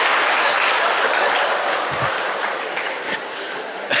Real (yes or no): yes